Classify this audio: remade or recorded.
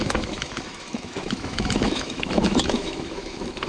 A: remade